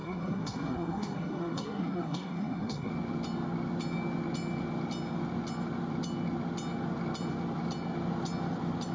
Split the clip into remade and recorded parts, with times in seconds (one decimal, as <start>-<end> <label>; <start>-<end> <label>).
0.0-2.9 remade; 2.9-8.9 recorded